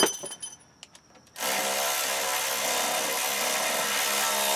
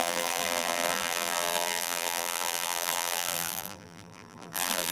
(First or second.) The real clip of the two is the first